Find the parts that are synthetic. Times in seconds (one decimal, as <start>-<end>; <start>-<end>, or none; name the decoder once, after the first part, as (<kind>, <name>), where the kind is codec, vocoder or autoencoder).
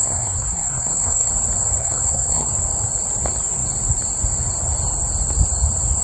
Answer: 0.0-1.3 (codec, SNAC); 1.8-2.5